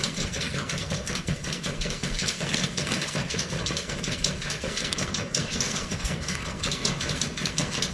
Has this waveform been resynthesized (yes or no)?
yes